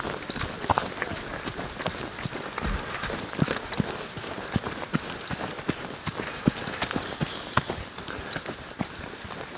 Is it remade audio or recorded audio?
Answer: recorded